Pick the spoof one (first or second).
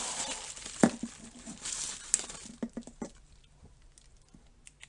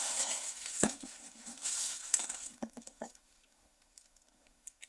second